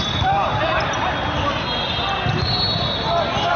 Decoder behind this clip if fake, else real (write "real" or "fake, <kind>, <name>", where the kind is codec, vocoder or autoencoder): real